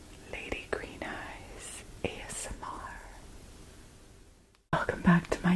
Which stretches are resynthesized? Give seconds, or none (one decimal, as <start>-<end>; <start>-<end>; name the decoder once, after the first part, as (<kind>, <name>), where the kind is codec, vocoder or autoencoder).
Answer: 2.4-3.2 (codec, HILCodec)